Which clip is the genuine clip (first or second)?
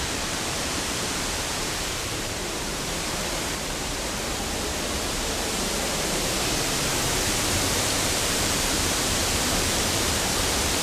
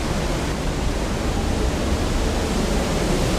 second